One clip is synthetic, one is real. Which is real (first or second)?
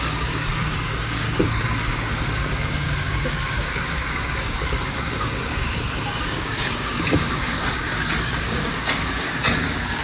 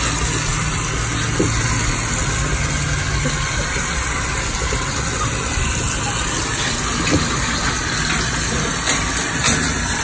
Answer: second